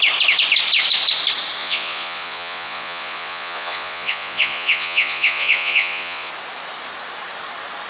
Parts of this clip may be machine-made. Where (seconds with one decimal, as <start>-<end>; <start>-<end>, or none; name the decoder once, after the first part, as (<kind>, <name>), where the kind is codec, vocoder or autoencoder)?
1.6-6.3 (vocoder, Vocos)